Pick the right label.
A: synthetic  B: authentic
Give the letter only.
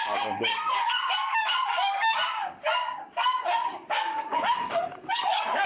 A